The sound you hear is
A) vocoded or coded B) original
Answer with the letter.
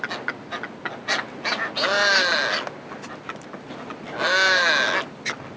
B